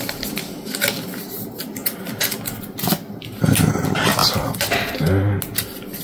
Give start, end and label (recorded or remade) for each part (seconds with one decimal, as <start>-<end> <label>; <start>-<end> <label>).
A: 0.0-1.8 recorded; 1.8-3.4 remade; 3.4-6.0 recorded

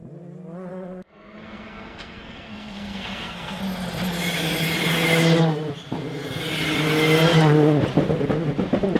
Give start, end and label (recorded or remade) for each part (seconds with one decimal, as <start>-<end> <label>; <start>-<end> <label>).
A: 0.0-0.7 recorded; 0.7-3.6 remade; 3.6-9.0 recorded